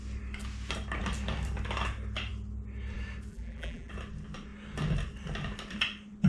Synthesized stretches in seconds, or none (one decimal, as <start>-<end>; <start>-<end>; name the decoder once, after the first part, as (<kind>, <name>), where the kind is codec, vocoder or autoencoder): 3.3-3.9 (vocoder, BigVGAN v2)